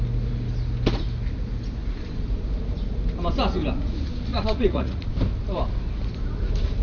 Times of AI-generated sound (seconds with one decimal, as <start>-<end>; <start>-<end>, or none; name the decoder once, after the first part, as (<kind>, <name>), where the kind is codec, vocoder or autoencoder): 4.3-5.1 (vocoder, Vocos)